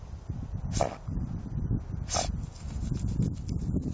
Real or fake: real